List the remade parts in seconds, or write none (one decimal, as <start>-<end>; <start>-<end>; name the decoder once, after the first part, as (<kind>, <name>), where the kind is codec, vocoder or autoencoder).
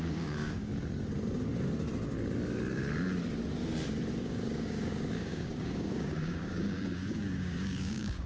0.0-0.7 (codec, DAC); 4.2-8.3